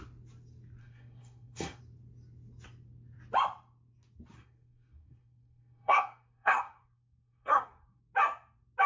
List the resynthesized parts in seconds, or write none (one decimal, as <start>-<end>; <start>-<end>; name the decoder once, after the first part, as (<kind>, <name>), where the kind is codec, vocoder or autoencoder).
0.8-1.8 (codec, SNAC); 4.4-8.0